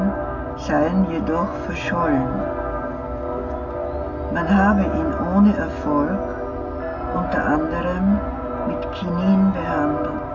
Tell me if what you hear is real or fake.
real